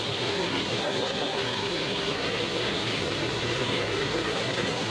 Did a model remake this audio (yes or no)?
yes